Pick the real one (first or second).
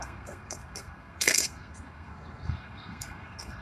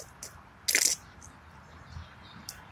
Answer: second